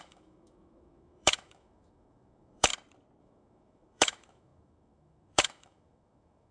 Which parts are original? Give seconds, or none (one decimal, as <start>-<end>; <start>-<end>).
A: 2.7-3.2